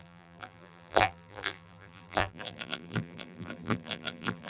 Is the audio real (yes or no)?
no